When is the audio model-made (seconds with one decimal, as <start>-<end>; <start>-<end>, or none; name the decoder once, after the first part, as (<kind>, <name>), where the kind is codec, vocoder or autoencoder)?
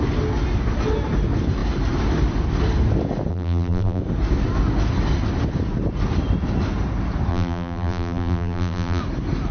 3.3-4.0 (vocoder, BigVGAN v2); 7.3-9.0